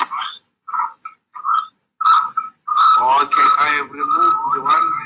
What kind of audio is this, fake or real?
real